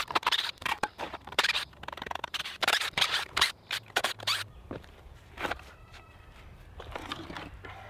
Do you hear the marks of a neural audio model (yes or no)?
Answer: yes